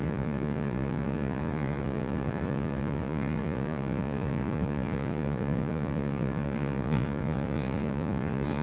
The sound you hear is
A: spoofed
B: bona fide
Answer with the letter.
A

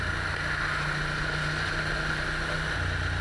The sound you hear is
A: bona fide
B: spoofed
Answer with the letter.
A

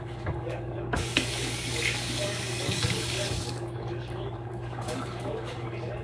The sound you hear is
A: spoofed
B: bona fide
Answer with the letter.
A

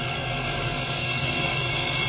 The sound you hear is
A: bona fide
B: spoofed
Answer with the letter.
B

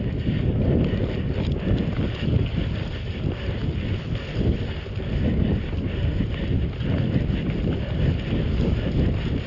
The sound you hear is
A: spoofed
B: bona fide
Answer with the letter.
B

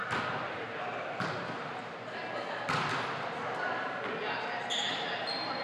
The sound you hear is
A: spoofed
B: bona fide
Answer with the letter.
B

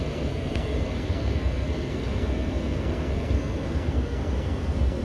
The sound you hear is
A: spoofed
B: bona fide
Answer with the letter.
A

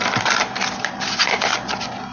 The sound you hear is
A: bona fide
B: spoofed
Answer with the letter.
A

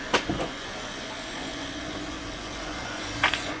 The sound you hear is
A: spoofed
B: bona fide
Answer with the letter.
A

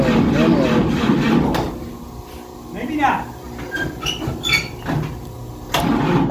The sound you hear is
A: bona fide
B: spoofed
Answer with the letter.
A